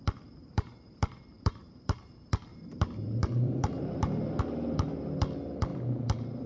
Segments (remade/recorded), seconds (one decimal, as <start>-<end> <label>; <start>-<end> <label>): 0.0-0.4 recorded; 0.4-2.0 remade; 2.0-2.5 recorded; 2.5-4.4 remade; 4.4-6.5 recorded